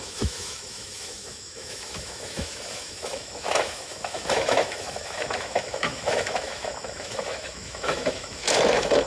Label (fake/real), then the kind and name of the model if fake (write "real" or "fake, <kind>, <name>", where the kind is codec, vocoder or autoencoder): fake, autoencoder, DAC-VAE